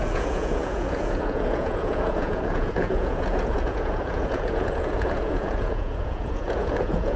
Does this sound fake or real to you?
fake